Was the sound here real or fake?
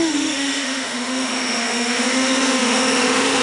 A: fake